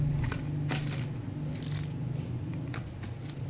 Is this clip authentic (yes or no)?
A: yes